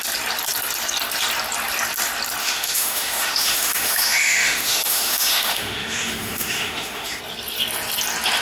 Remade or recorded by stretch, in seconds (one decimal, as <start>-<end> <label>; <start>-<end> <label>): 0.0-2.4 recorded; 2.4-7.2 remade; 7.2-8.4 recorded